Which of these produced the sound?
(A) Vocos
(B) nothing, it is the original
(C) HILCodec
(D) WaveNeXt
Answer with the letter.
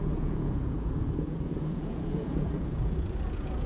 A